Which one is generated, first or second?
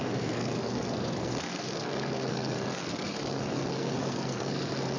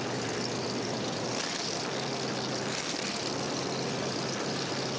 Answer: first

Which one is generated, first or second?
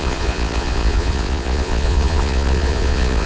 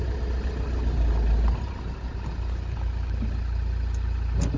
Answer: first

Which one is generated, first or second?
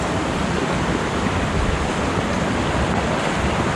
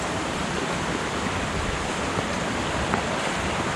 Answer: second